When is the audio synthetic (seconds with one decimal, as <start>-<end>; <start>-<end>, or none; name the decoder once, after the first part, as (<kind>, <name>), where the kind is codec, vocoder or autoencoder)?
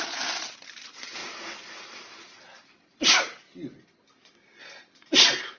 0.0-1.2 (vocoder, BigVGAN v2); 4.6-5.6